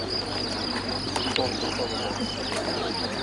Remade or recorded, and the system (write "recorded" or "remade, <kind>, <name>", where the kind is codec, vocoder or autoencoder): recorded